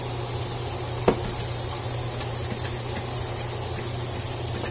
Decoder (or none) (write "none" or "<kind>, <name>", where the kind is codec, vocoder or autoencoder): none